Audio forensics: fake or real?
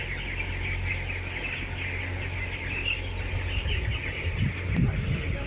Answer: real